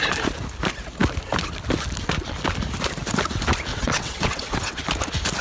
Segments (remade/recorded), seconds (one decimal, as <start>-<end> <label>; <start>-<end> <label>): 0.0-3.7 recorded; 3.7-4.8 remade; 4.8-5.4 recorded